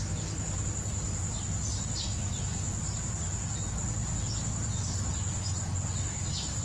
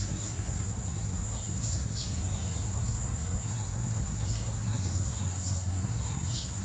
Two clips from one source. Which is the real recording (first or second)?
first